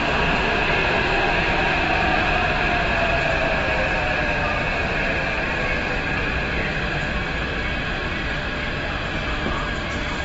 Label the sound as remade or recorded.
recorded